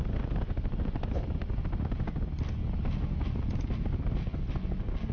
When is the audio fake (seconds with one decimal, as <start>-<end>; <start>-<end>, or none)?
none